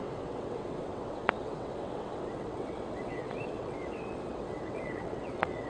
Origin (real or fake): fake